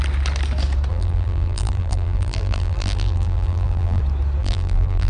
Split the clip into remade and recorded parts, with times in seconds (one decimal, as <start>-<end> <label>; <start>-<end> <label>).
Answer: 0.0-0.9 recorded; 0.9-4.0 remade; 4.0-4.4 recorded; 4.4-5.1 remade